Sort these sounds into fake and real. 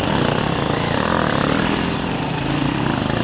real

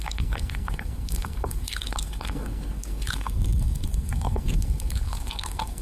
fake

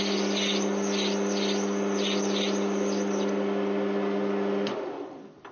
real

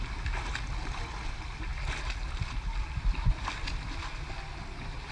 fake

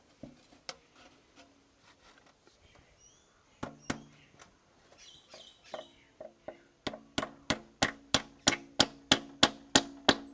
real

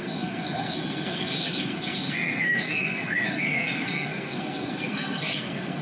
fake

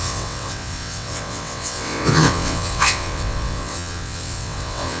fake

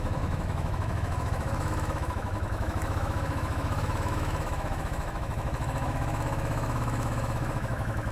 fake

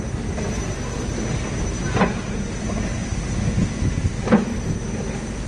real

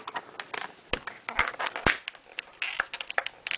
real